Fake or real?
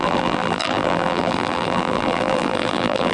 fake